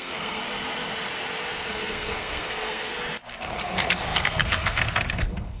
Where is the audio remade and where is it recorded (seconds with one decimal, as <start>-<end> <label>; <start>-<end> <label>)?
0.0-0.4 remade; 0.4-1.7 recorded; 1.7-2.9 remade; 2.9-3.4 recorded; 3.4-5.6 remade